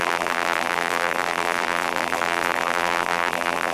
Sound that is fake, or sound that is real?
fake